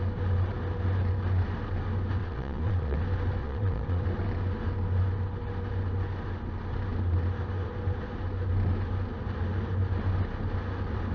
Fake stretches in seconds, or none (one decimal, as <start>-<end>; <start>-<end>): 2.2-3.0; 3.4-4.0